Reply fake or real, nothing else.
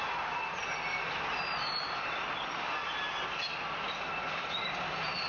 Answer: real